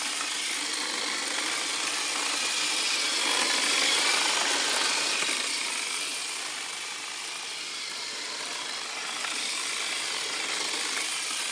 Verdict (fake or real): real